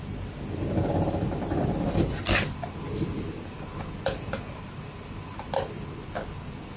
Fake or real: real